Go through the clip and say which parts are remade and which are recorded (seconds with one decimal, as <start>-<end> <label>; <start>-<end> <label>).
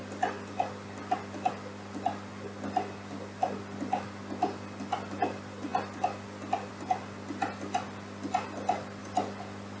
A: 0.0-9.8 recorded